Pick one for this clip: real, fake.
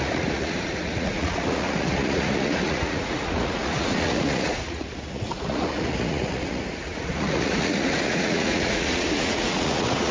fake